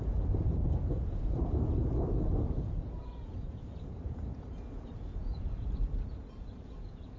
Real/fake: fake